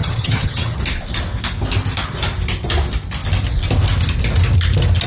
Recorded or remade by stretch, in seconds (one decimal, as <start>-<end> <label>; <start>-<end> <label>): 0.0-0.8 remade; 0.8-5.1 recorded